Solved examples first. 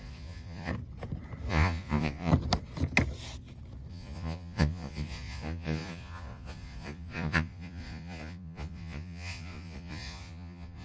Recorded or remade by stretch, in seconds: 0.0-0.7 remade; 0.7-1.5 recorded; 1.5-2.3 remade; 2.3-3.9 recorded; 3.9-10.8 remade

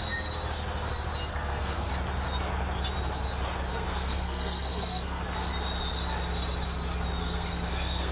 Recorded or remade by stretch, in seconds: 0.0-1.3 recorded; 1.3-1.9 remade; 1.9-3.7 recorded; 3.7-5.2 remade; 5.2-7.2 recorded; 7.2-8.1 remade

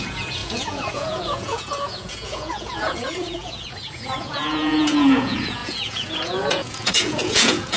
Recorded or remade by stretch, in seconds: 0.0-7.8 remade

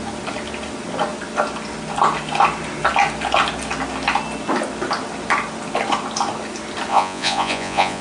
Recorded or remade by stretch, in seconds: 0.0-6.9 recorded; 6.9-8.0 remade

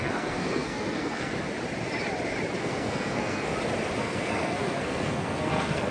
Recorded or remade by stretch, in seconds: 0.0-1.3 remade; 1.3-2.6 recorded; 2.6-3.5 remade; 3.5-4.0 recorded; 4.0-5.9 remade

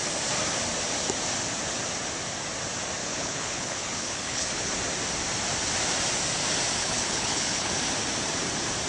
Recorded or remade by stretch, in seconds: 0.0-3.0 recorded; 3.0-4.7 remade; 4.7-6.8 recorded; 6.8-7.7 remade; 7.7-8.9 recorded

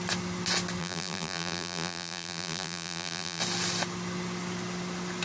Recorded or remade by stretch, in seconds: 0.0-0.8 recorded; 0.8-3.4 remade; 3.4-5.2 recorded